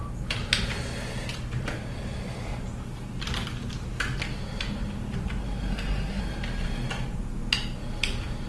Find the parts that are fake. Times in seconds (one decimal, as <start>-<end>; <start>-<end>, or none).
5.7-6.2